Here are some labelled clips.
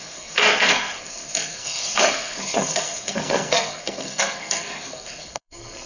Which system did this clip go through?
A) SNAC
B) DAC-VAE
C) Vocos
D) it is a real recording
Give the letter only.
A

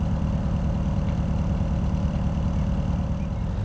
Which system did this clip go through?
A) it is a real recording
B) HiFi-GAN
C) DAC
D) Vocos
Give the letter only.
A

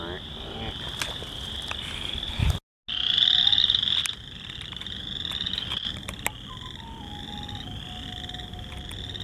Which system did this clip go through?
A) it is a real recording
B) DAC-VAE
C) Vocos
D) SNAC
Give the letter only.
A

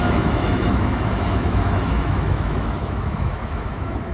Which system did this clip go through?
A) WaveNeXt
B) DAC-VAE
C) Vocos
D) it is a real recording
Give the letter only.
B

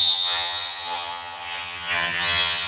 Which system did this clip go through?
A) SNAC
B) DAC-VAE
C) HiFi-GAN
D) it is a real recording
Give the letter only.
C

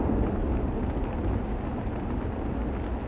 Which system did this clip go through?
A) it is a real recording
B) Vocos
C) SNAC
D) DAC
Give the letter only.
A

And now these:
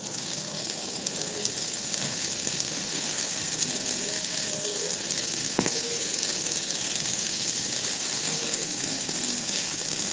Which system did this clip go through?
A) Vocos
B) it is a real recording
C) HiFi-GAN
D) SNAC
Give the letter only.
D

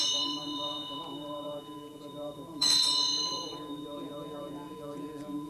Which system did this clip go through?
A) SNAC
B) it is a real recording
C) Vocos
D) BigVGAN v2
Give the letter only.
C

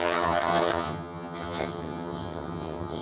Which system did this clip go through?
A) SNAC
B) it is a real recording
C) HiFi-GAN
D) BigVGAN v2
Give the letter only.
C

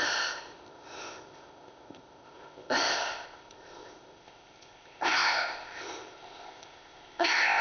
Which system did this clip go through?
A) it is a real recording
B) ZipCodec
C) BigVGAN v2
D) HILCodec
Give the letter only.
B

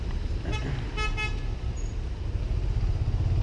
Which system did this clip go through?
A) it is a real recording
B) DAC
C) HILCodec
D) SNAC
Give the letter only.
A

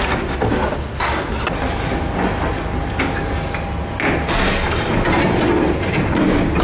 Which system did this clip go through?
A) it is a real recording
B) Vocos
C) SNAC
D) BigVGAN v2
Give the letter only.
A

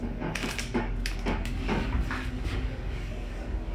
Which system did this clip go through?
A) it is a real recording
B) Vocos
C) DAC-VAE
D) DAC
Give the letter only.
D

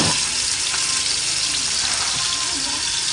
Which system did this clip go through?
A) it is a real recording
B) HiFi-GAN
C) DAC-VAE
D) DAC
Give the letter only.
A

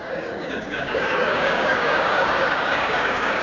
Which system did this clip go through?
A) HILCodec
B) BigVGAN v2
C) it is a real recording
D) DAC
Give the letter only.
D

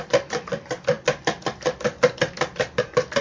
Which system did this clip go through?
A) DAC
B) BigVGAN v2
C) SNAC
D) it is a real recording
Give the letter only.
D